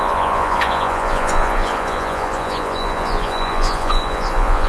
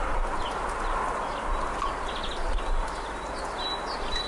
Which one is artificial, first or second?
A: first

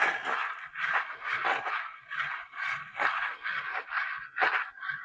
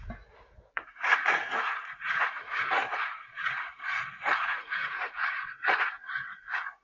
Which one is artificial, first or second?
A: second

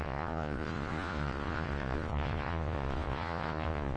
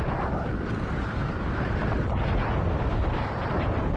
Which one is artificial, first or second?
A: first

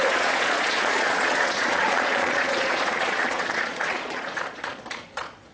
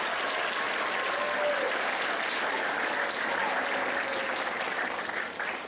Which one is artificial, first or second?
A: first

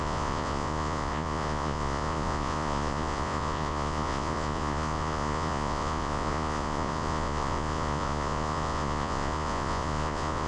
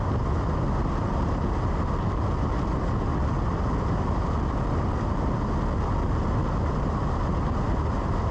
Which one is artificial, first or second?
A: first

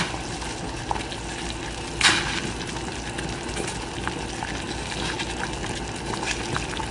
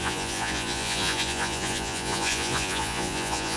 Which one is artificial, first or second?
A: second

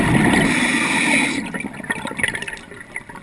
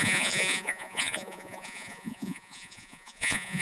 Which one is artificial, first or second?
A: second